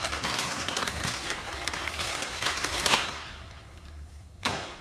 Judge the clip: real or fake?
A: fake